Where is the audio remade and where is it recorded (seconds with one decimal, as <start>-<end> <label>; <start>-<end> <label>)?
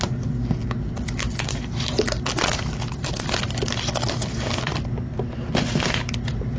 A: 0.0-6.6 recorded